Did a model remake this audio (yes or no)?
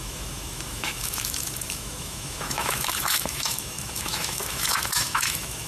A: yes